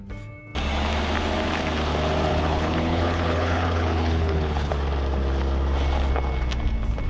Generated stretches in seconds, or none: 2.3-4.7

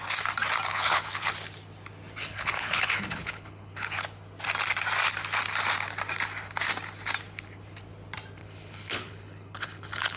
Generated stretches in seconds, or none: 0.7-1.3; 2.2-4.0; 8.4-10.2

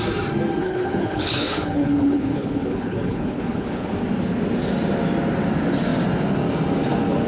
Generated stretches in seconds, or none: 0.6-3.9

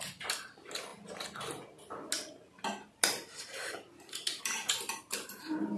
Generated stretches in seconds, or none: none

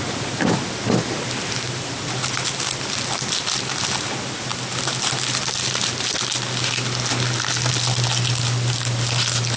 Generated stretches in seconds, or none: none

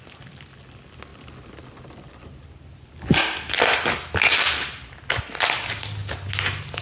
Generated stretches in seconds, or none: none